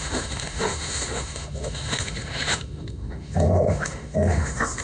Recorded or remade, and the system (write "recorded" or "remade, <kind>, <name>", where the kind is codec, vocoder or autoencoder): remade, autoencoder, DAC-VAE